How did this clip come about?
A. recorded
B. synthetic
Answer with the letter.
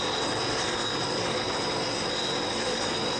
A